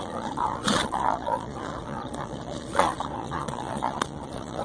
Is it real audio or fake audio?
fake